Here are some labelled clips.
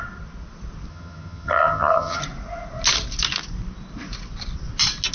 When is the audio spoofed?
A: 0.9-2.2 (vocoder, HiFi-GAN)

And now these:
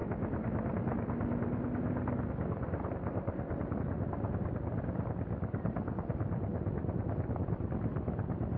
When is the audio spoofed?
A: none

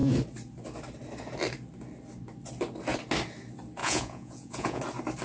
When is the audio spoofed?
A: 3.8-4.8 (vocoder, Vocos)

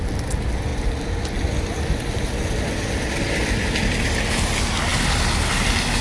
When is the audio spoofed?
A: none

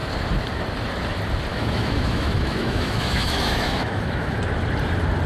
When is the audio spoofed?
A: 1.5-4.4 (autoencoder, DAC-VAE)

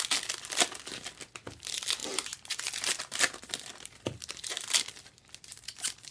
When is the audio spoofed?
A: 2.0-6.1 (vocoder, BigVGAN v2)

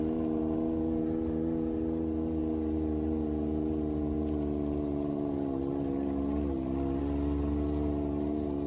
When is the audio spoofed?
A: none

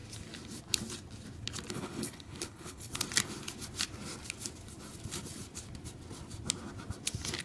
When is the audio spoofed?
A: 1.7-2.9 (codec, HILCodec)